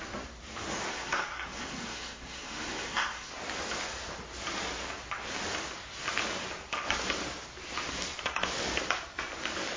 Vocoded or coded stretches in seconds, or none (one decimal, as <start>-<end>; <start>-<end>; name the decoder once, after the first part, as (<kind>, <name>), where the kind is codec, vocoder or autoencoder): 0.9-3.3 (codec, SNAC)